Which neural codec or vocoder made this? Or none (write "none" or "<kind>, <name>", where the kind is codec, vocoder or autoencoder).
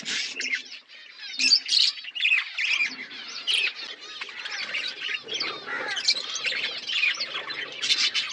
none